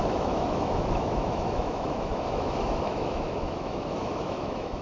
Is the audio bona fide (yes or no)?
no